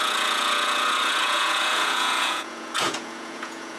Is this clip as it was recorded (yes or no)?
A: no